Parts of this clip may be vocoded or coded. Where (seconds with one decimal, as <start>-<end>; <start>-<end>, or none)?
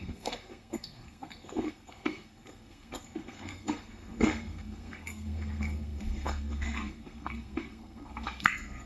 0.0-8.9